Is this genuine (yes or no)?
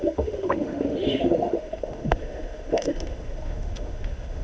no